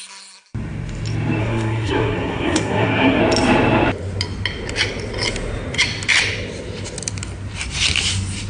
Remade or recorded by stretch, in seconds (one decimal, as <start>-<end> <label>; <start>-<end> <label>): 0.0-1.4 recorded; 1.4-3.2 remade; 3.2-8.5 recorded